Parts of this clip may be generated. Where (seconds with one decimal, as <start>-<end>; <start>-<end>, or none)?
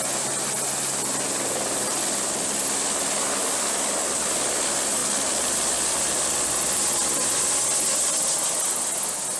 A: none